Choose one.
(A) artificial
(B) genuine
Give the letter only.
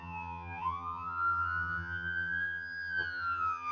A